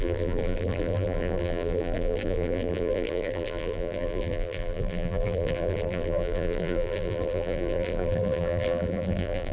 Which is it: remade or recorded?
remade